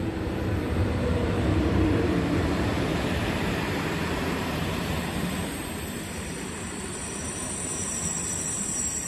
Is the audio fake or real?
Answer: fake